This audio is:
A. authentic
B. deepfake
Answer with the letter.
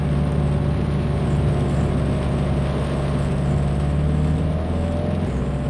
B